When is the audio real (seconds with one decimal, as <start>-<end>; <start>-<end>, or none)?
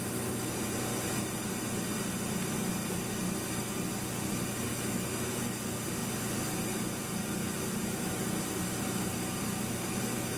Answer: 0.0-4.7; 5.4-10.4